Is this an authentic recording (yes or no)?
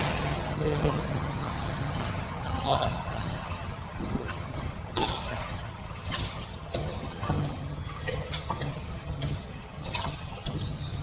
no